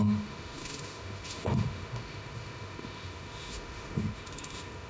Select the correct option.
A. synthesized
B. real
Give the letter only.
A